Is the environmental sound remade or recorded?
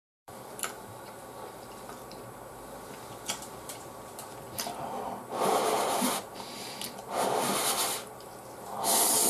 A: remade